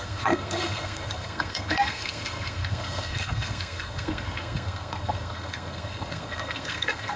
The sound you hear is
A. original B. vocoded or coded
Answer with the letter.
B